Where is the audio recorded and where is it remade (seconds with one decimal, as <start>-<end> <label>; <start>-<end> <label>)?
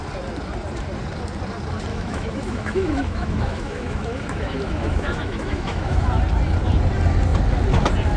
0.0-1.9 recorded; 1.9-6.2 remade; 6.2-8.2 recorded